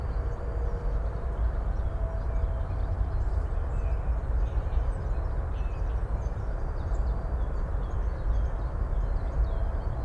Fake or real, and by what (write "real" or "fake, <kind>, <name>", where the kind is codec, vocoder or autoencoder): real